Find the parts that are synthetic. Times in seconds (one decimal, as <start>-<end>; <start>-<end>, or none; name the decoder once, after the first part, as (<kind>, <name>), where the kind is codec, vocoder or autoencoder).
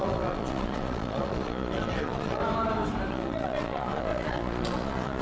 0.0-2.4 (vocoder, Vocos); 3.1-5.2